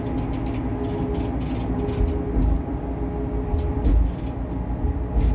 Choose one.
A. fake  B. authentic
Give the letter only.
B